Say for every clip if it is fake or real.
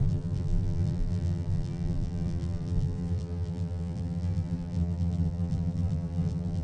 fake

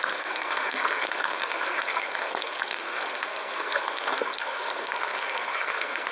fake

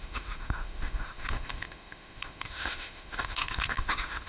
fake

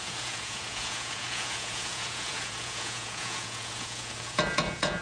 fake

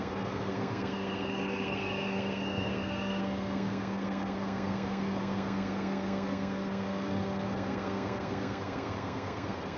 fake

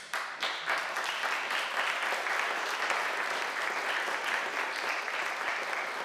real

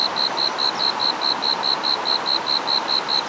real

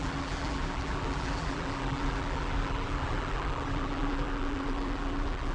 fake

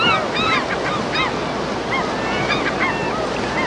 real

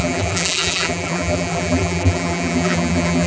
fake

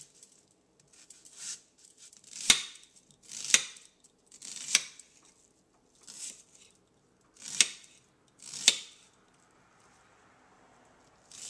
real